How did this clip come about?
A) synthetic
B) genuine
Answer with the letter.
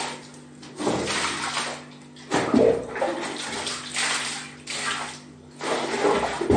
B